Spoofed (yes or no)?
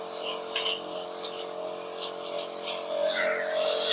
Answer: no